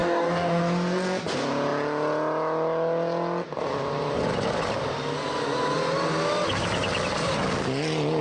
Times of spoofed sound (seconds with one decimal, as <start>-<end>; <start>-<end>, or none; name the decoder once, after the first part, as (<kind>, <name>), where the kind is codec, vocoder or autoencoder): 0.0-0.6 (codec, DAC)